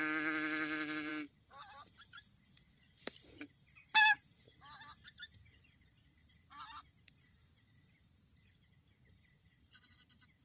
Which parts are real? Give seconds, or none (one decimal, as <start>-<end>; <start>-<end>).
0.0-10.4